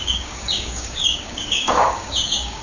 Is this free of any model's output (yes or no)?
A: no